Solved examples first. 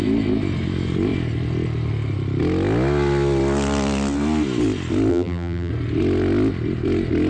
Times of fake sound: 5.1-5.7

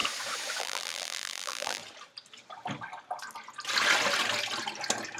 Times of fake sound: 0.6-1.8

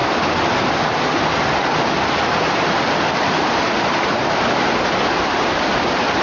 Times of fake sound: none

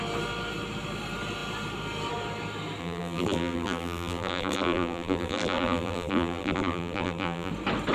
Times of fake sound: 2.8-7.5

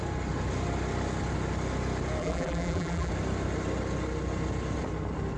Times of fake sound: 2.2-3.1